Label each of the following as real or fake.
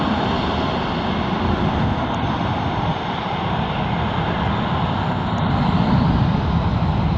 real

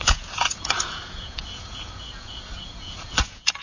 fake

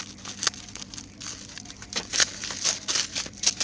real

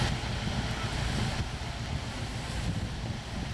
real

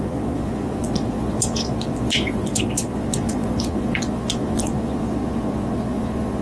fake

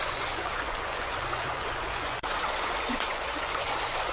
fake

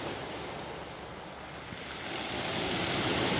real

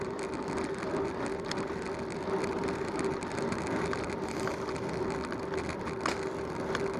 real